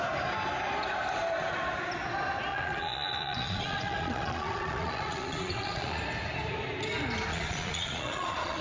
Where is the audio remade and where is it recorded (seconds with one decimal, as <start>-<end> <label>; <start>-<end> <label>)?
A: 0.0-2.5 recorded; 2.5-6.0 remade; 6.0-7.3 recorded; 7.3-8.6 remade

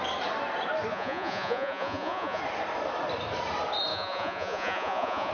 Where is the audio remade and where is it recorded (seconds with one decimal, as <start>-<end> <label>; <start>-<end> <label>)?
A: 0.0-0.9 recorded; 0.9-2.4 remade; 2.4-3.9 recorded; 3.9-5.3 remade

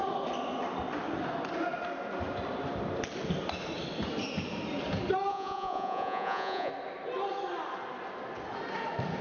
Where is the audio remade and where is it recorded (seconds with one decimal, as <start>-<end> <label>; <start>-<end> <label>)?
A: 0.0-5.3 recorded; 5.3-6.7 remade; 6.7-9.2 recorded